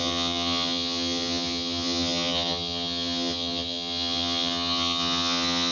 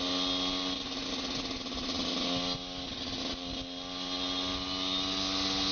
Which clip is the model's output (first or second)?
first